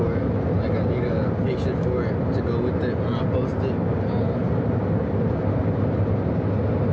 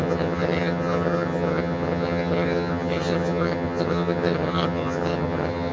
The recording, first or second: first